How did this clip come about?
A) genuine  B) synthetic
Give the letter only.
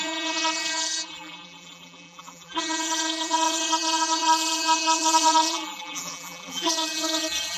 B